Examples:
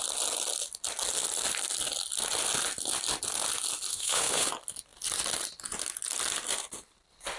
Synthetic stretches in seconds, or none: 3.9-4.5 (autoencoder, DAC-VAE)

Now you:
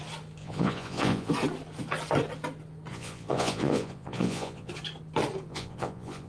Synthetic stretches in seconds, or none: 0.4-1.3 (vocoder, Vocos); 2.9-4.7; 5.5-6.3

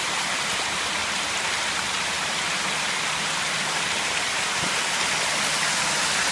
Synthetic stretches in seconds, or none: 1.0-4.8 (vocoder, BigVGAN v2)

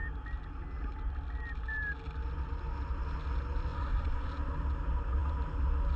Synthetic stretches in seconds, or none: 3.7-4.3 (vocoder, Vocos)

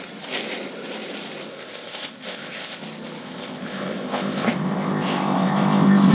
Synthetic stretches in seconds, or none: 1.5-2.8 (codec, ZipCodec); 3.2-6.1